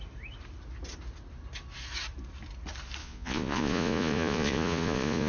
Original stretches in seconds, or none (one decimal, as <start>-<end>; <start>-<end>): 0.0-3.0